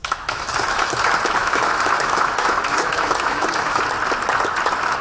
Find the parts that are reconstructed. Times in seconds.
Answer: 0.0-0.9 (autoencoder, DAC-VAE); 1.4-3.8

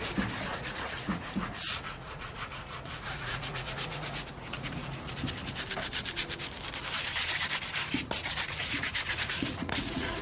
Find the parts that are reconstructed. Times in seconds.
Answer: 0.5-5.2 (vocoder, Vocos); 8.2-10.2

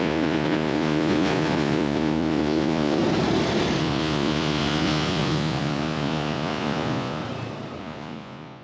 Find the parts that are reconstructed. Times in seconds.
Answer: 0.0-3.0 (vocoder, Vocos); 3.8-7.2; 7.8-8.6

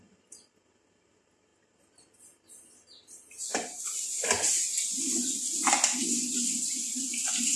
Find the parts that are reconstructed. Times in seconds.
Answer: none

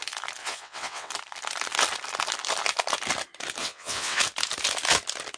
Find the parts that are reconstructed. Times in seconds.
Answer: 0.4-1.1 (vocoder, WaveNeXt); 3.6-4.2

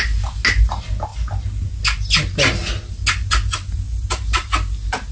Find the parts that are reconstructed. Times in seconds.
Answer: none

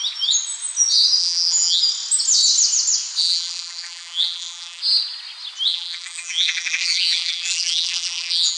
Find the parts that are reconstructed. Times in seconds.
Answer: 1.2-1.8 (vocoder, BigVGAN v2); 3.2-4.8; 5.7-8.6